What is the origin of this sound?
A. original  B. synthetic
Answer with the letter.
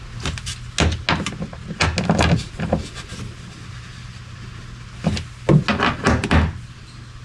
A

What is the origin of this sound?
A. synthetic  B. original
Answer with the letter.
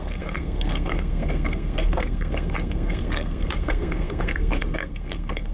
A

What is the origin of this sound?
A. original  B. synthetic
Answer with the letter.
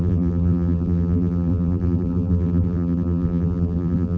B